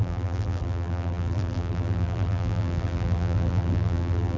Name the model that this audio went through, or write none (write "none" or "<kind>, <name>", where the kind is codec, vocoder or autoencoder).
vocoder, BigVGAN v2